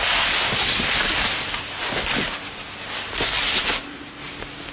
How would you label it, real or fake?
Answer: real